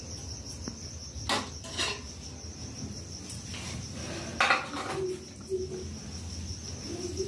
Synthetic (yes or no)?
no